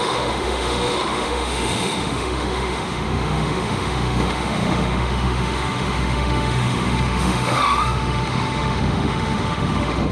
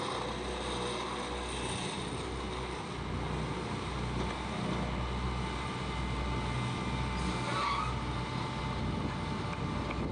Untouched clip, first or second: second